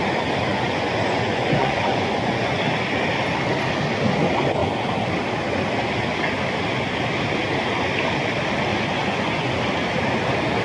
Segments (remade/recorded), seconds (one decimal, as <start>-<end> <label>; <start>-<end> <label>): 0.0-0.5 recorded; 0.5-2.6 remade; 2.6-8.7 recorded; 8.7-9.5 remade; 9.5-10.6 recorded